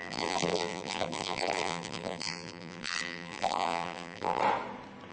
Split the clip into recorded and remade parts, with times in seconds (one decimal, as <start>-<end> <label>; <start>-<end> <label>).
0.0-4.4 remade; 4.4-5.1 recorded